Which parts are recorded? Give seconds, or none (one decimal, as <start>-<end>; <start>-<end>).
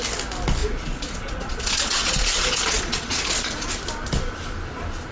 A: 0.0-0.6; 3.7-5.1